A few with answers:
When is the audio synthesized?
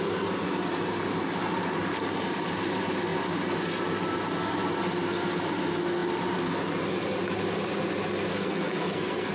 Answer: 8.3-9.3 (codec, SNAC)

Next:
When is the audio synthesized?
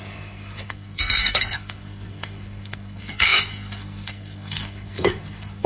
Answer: 0.0-5.7 (codec, SNAC)